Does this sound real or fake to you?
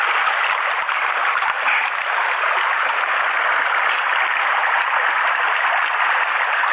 real